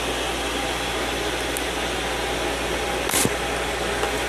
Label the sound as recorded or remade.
recorded